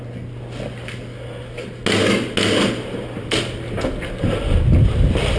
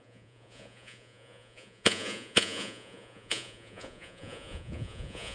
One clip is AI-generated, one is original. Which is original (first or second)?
first